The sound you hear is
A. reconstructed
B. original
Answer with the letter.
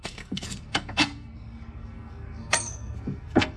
A